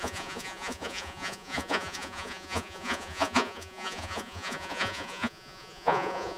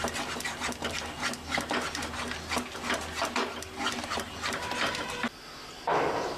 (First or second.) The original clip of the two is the second